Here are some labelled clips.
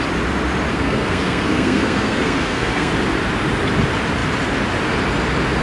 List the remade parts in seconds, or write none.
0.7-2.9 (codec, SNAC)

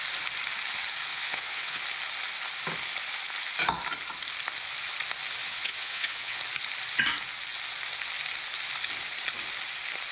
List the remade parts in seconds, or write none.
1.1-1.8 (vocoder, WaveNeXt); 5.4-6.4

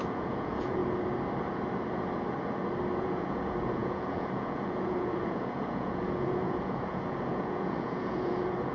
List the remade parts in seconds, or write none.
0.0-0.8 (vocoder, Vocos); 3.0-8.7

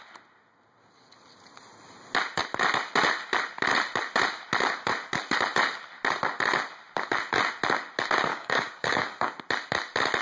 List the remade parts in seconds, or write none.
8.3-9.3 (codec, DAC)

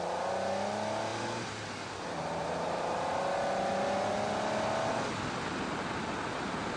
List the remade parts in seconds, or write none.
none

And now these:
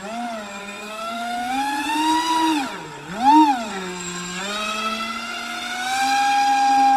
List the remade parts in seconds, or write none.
0.6-1.6 (codec, SNAC); 3.7-4.4

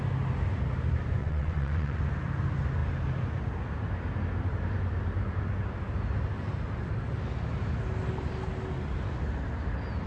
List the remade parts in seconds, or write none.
1.2-2.0 (vocoder, WaveNeXt)

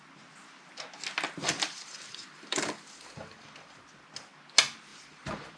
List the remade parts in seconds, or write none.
1.4-3.8 (vocoder, BigVGAN v2); 4.9-5.6